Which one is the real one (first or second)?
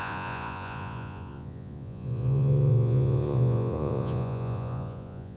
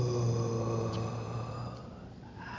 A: second